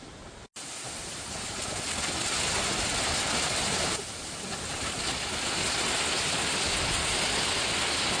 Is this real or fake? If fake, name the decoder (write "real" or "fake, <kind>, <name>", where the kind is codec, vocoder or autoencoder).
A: real